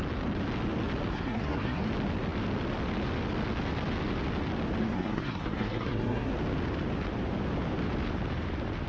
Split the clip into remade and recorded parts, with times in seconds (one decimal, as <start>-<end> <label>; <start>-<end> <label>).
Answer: 0.0-1.1 recorded; 1.1-1.9 remade; 1.9-4.8 recorded; 4.8-6.3 remade; 6.3-8.9 recorded

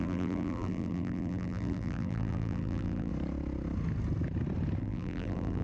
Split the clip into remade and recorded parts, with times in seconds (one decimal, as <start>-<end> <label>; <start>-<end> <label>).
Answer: 0.0-3.1 remade; 3.1-4.8 recorded; 4.8-5.6 remade

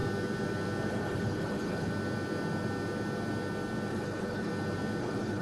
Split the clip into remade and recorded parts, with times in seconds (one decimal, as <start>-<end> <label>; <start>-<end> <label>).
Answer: 0.0-0.9 recorded; 0.9-1.9 remade; 1.9-3.9 recorded; 3.9-4.5 remade; 4.5-5.0 recorded; 5.0-5.4 remade

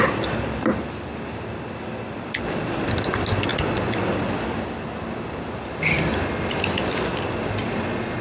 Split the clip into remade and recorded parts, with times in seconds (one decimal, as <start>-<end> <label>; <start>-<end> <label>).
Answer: 0.0-3.5 recorded; 3.5-5.4 remade; 5.4-8.2 recorded

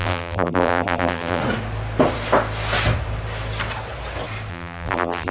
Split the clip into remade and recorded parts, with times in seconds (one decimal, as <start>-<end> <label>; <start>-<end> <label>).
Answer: 0.0-1.4 remade; 1.4-4.5 recorded; 4.5-5.3 remade

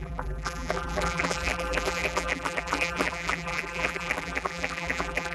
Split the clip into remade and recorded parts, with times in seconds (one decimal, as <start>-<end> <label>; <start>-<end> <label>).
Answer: 0.0-5.3 remade